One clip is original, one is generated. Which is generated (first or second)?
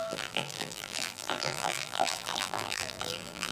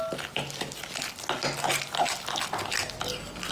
first